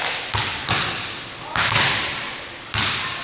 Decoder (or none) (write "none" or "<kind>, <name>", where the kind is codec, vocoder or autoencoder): none